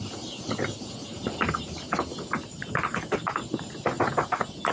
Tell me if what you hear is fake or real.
real